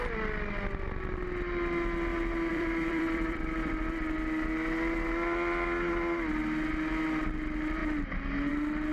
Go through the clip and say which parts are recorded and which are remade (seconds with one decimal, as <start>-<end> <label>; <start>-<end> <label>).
0.0-2.5 recorded; 2.5-3.7 remade; 3.7-8.9 recorded